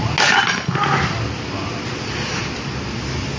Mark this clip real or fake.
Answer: real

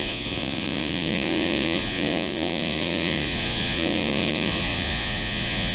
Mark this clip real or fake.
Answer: fake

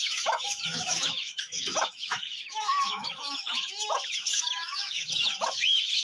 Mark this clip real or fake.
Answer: fake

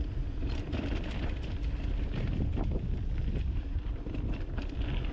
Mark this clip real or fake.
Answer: real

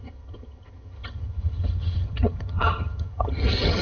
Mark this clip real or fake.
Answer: fake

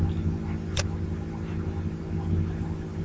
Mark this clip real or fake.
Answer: real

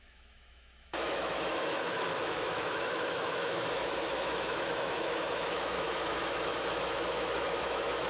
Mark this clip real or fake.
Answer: fake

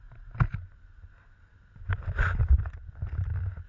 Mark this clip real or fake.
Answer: real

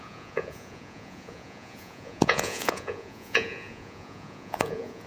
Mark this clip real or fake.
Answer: fake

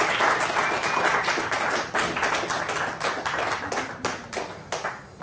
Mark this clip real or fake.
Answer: real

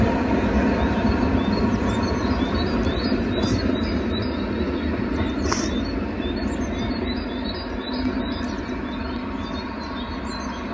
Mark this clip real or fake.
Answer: real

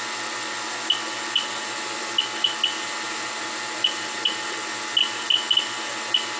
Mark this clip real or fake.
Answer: real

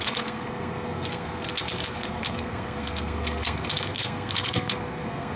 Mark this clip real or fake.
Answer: fake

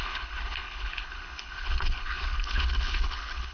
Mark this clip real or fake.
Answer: fake